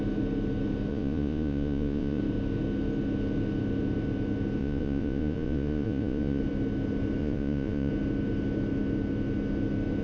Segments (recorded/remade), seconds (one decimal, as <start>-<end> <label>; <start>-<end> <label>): 0.0-0.9 recorded; 0.9-2.2 remade; 2.2-4.6 recorded; 4.6-6.4 remade; 6.4-7.2 recorded; 7.2-7.9 remade; 7.9-10.0 recorded